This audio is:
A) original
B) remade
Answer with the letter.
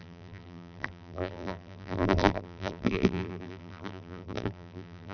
B